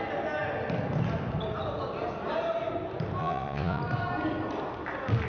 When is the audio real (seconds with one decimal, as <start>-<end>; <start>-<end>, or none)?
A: 0.0-3.2; 3.8-5.3